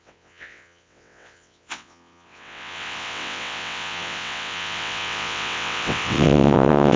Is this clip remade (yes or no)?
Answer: yes